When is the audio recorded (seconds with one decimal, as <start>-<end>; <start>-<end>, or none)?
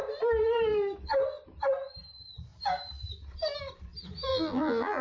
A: 0.0-4.3